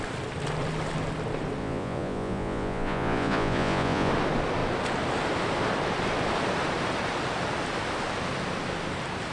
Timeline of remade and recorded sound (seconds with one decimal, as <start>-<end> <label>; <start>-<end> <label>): 0.0-1.6 recorded; 1.6-4.1 remade; 4.1-9.3 recorded